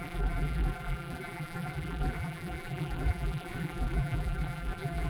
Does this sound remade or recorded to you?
remade